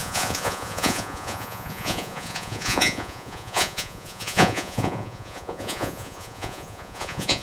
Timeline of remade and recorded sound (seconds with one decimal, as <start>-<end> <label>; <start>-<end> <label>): 0.0-7.4 remade